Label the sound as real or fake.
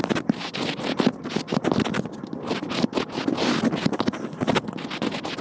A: real